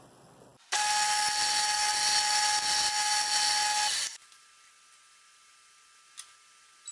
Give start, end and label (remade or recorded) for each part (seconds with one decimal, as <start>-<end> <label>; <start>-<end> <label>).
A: 0.0-6.9 recorded